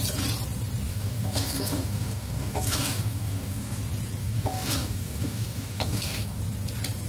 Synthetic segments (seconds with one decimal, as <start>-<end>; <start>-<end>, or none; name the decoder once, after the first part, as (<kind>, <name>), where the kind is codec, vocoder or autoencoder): 0.9-3.8 (codec, DAC); 4.2-6.4